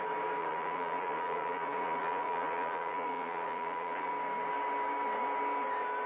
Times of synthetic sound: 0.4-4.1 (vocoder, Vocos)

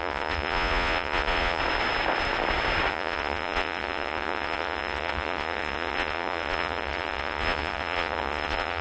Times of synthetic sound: 0.0-1.6 (vocoder, Vocos); 2.9-8.8

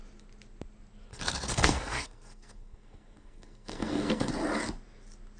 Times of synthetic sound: 1.1-4.3 (codec, SNAC)

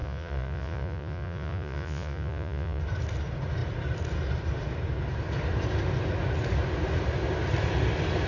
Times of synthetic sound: 0.0-2.8 (vocoder, Vocos)

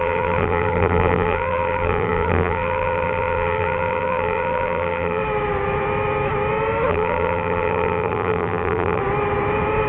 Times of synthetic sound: 0.0-5.2 (vocoder, BigVGAN v2); 6.9-9.0